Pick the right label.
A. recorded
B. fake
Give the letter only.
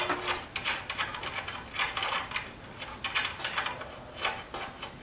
A